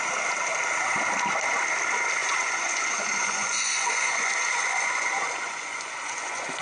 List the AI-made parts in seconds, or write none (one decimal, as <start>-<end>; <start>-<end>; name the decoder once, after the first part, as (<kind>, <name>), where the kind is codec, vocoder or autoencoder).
2.2-6.6 (vocoder, Vocos)